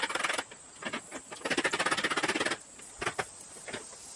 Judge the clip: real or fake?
real